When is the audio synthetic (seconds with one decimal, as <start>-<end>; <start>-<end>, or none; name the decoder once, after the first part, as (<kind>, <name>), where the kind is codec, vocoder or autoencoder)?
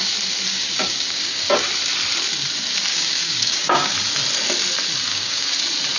0.5-1.4 (codec, DAC); 2.9-3.9; 5.1-5.6